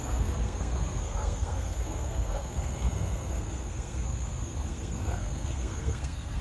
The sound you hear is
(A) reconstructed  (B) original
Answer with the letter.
A